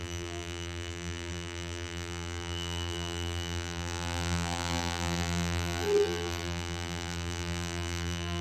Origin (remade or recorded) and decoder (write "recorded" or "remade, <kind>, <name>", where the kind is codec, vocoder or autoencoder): remade, vocoder, BigVGAN v2